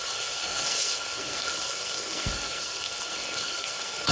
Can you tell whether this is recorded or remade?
remade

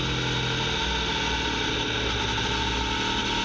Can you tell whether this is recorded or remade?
recorded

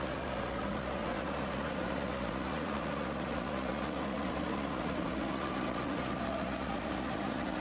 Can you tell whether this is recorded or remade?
remade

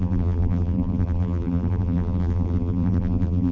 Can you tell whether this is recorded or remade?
remade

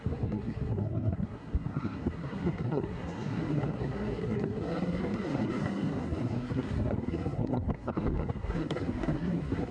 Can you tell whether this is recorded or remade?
remade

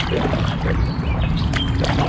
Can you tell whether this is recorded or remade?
remade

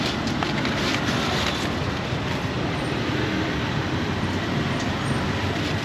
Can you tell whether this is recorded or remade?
remade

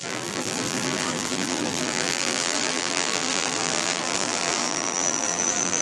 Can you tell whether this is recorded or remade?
remade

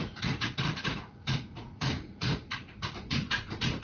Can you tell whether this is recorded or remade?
remade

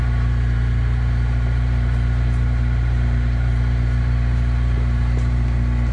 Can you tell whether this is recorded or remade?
remade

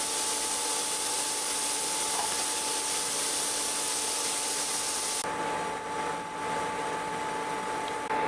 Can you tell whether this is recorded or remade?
recorded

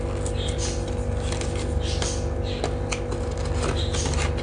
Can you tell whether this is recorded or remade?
recorded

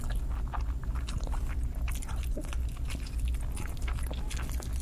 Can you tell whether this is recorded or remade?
recorded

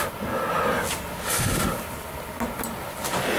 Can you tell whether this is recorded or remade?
recorded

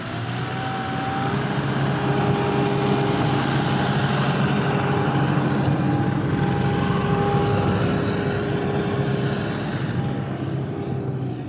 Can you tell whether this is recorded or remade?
recorded